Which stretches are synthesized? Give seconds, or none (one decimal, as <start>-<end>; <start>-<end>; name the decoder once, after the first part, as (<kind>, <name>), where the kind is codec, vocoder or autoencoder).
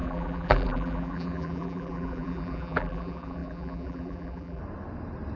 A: 0.0-4.6 (vocoder, BigVGAN v2)